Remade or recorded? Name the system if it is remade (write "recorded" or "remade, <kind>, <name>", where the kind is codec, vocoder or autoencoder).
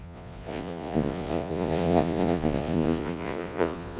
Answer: remade, vocoder, Vocos